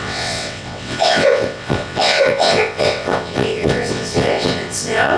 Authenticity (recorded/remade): remade